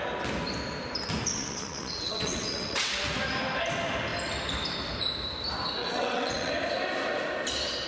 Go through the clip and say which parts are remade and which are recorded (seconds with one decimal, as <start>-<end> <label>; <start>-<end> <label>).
0.0-1.3 recorded; 1.3-2.9 remade; 2.9-5.8 recorded; 5.8-6.5 remade; 6.5-7.9 recorded